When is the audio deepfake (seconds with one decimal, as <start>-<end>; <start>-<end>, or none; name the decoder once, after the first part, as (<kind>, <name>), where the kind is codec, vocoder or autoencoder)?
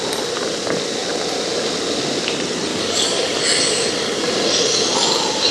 2.7-3.4 (codec, DAC)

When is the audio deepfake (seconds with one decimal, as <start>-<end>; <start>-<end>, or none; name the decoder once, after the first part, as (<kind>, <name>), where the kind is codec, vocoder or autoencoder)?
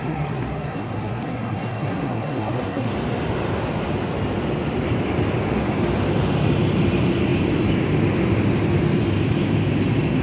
0.0-2.9 (codec, SNAC)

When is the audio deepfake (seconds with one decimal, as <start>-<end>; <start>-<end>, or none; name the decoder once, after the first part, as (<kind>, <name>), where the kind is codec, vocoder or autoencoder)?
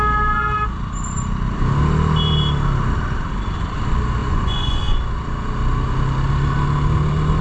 4.2-4.8 (vocoder, Vocos)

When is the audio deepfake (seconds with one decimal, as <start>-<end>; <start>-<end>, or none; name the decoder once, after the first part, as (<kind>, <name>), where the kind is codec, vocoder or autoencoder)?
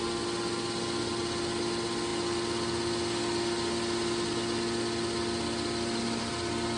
none